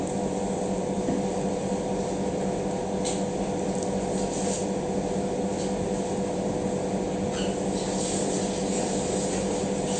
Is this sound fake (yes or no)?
no